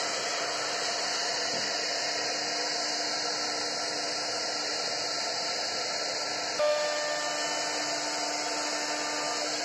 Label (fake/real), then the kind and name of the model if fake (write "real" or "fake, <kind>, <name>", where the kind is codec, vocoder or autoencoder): real